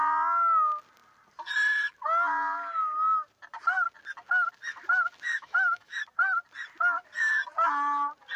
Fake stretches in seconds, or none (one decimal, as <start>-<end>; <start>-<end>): 5.3-6.0